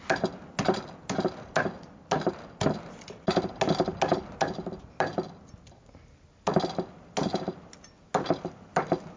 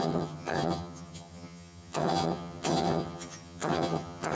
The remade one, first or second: second